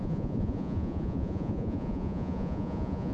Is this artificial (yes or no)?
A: yes